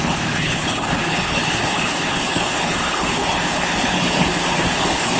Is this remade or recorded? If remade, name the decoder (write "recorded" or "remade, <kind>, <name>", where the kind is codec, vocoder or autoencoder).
remade, codec, HILCodec